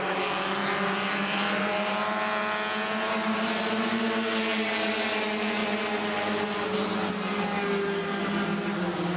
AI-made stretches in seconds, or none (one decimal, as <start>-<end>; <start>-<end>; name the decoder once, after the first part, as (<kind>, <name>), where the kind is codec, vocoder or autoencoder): none